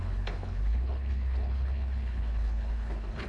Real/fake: fake